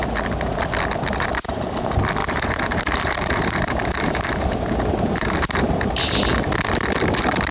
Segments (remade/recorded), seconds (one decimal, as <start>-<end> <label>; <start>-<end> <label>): 0.0-2.2 recorded; 2.2-5.7 remade; 5.7-7.5 recorded